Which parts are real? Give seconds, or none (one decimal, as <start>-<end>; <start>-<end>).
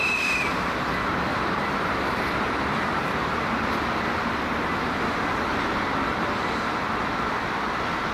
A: 0.0-1.3; 5.8-8.1